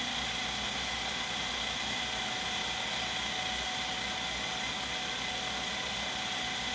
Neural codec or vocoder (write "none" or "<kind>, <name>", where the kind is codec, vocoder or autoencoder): none